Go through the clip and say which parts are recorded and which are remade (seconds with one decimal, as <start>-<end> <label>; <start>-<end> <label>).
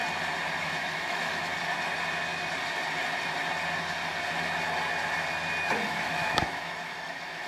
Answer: 0.0-0.6 recorded; 0.6-1.5 remade; 1.5-5.6 recorded; 5.6-7.5 remade